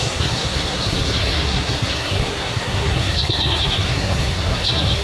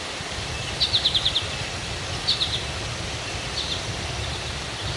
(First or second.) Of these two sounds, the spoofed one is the first